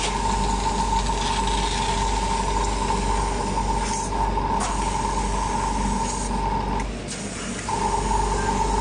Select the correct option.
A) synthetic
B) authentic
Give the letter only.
B